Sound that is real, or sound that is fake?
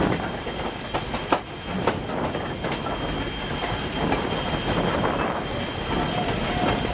real